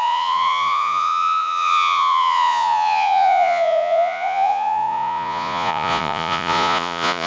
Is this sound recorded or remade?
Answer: remade